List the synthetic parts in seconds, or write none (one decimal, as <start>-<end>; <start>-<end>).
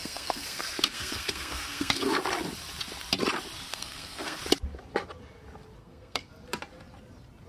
0.0-2.2; 3.7-4.4; 5.8-6.3